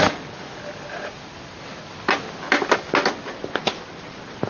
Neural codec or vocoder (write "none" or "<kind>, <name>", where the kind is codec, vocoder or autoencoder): none